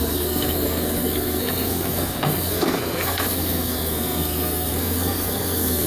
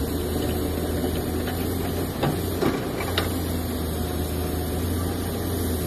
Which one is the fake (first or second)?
first